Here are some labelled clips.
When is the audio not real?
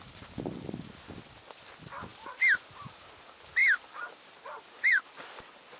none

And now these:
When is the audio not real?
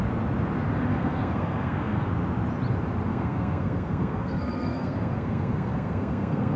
0.9-2.1 (codec, SNAC); 3.1-6.6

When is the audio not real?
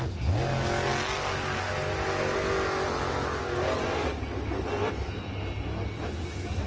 none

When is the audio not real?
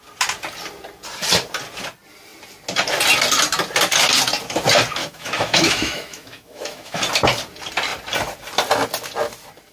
5.0-7.0 (autoencoder, DAC-VAE)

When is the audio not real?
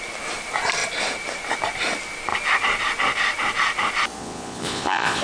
4.2-5.2 (vocoder, Vocos)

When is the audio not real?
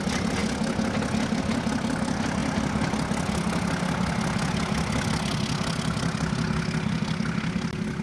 none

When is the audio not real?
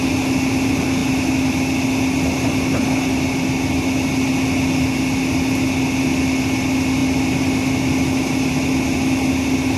none